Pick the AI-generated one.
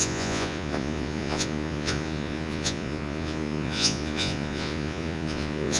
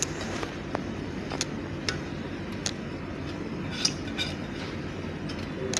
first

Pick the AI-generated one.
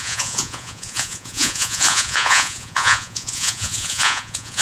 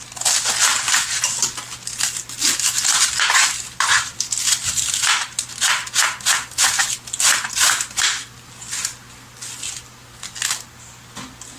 first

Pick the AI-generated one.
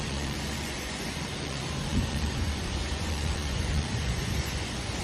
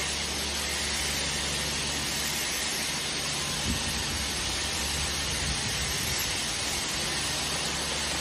first